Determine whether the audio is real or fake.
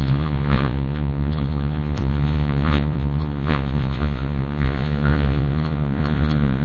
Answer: fake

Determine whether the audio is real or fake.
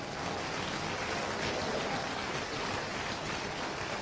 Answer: real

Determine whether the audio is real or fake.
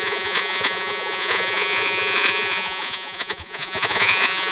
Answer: fake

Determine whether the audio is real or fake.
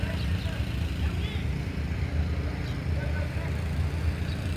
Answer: real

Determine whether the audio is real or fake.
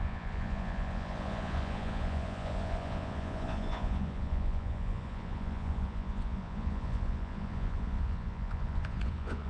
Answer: fake